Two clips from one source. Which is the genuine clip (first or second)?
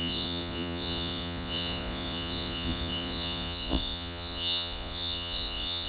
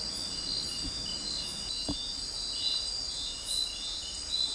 second